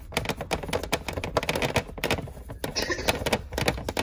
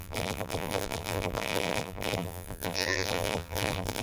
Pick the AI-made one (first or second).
second